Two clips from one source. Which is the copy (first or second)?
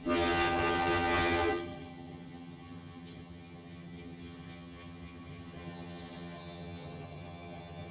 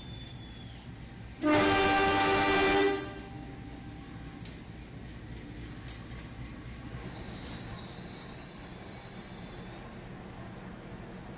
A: first